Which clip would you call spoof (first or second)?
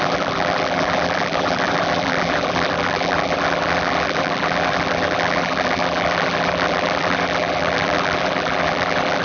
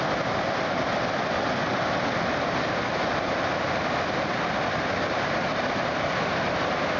first